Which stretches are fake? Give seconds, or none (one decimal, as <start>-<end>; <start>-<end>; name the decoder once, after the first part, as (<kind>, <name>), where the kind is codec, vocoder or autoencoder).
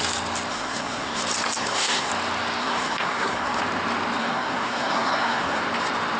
0.5-1.2 (codec, SNAC); 1.6-2.1; 2.6-3.6; 4.2-5.6